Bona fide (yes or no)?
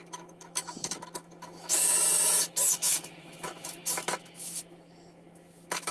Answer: no